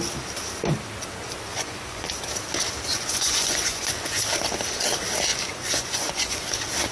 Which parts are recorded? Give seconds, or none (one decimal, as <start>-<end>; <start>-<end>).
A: 0.0-1.5; 2.1-2.9; 4.2-5.3; 6.4-6.9